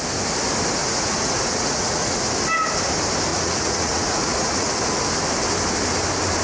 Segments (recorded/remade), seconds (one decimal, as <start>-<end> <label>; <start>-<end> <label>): 0.0-0.8 recorded; 0.8-2.2 remade; 2.2-3.3 recorded; 3.3-4.7 remade; 4.7-6.4 recorded

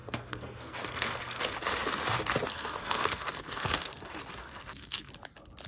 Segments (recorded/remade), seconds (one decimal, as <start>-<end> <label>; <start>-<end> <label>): 0.0-1.4 remade; 1.4-2.5 recorded; 2.5-4.0 remade; 4.0-4.4 recorded; 4.4-5.1 remade; 5.1-5.7 recorded